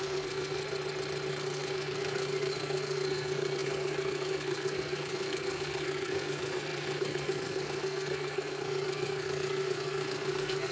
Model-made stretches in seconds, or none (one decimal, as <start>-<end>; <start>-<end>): 0.0-0.6; 1.3-10.7